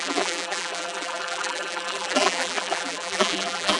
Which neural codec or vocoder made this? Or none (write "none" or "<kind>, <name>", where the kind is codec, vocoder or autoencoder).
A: vocoder, BigVGAN v2